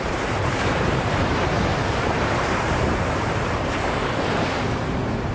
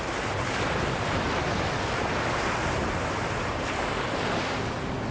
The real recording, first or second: second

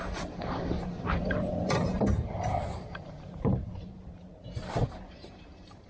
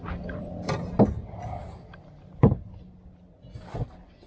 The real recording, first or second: second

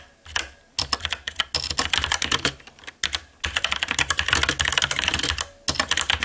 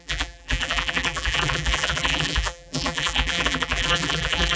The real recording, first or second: first